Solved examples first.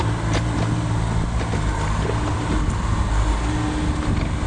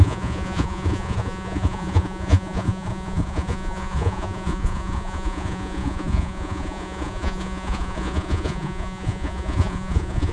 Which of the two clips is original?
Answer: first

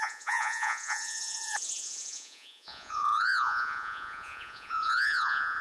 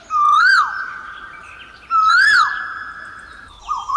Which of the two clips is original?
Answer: second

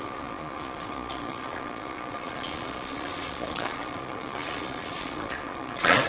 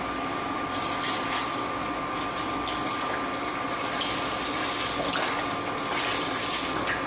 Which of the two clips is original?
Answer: second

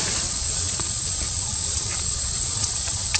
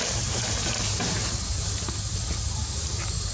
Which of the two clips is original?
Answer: second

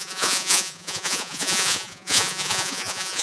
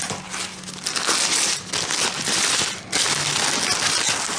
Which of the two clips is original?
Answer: second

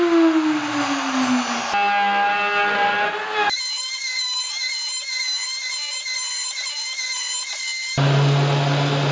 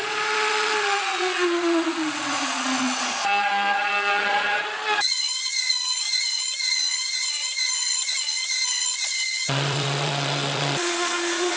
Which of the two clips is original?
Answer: first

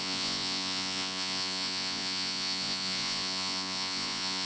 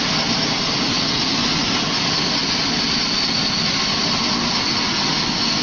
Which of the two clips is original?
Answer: second